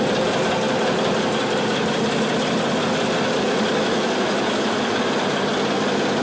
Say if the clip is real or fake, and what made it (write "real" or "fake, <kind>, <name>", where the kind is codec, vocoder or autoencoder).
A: real